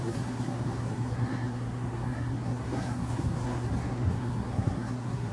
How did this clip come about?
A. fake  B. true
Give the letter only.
A